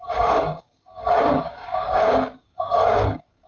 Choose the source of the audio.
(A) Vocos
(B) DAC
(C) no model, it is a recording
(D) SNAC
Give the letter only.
B